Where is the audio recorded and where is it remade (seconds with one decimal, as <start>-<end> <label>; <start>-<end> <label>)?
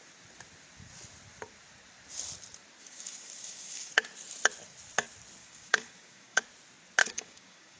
0.0-2.8 recorded; 2.8-3.9 remade; 3.9-5.4 recorded; 5.4-6.4 remade; 6.4-7.0 recorded; 7.0-7.8 remade